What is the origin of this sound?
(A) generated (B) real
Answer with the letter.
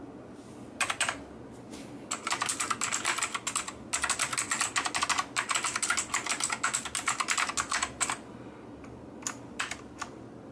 B